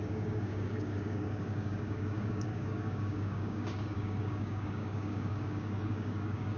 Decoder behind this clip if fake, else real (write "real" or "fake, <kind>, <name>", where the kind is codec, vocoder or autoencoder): fake, codec, DAC